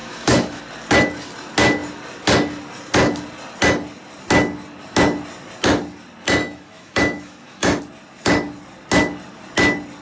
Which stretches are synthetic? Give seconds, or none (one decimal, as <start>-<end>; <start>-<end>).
0.0-0.6; 6.4-7.8